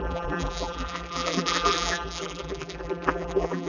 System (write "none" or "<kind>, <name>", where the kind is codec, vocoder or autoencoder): vocoder, BigVGAN v2